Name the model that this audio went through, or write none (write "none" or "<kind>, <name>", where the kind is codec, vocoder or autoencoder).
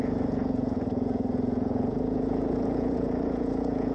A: vocoder, Vocos